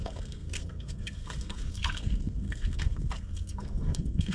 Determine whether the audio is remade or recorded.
remade